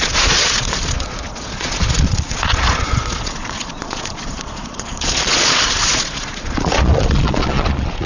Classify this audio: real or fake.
fake